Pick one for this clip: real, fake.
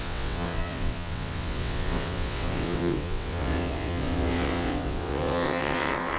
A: fake